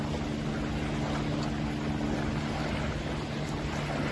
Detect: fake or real real